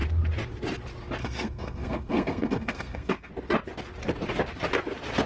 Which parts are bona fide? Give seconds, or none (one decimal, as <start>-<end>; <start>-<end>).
0.0-1.2; 3.3-5.3